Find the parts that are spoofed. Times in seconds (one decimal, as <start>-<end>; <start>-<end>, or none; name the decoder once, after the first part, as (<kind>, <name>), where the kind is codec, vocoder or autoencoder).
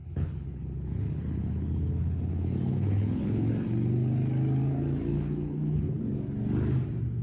0.0-3.5 (codec, HILCodec); 5.1-6.0